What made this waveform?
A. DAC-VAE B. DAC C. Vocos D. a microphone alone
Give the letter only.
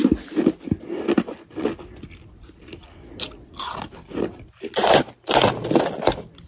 D